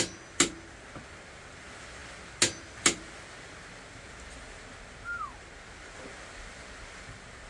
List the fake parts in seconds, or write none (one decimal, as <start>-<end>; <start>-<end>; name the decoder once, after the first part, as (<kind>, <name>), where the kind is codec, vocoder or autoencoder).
none